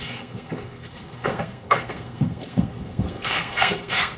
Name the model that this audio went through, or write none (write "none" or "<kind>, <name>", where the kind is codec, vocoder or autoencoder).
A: codec, SNAC